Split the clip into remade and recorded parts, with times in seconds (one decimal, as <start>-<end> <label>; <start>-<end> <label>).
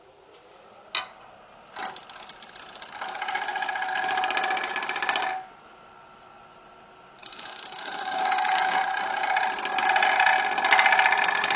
0.0-7.2 recorded; 7.2-8.8 remade; 8.8-11.6 recorded